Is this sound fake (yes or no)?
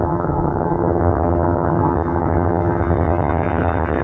yes